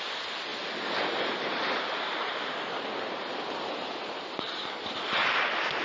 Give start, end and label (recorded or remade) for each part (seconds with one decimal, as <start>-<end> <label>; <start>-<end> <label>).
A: 0.0-5.8 recorded